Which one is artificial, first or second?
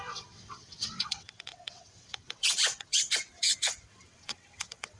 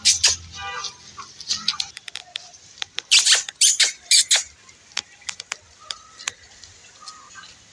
first